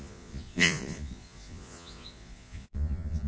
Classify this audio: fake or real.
fake